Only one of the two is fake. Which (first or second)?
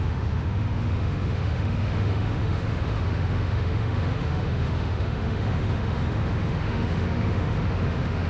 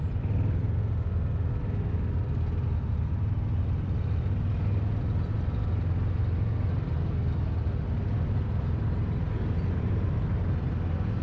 first